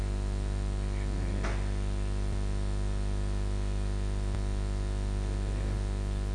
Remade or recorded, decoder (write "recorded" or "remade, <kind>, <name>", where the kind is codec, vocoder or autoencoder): recorded